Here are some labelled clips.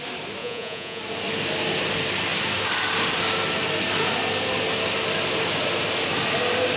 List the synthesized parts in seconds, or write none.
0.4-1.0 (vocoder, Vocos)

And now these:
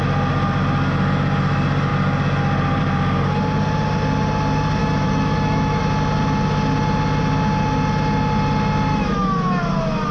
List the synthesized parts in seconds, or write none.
4.8-5.8 (autoencoder, DAC-VAE); 8.9-9.6

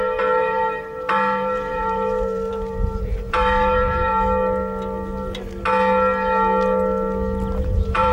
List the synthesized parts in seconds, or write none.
0.0-4.1 (vocoder, BigVGAN v2); 7.6-8.1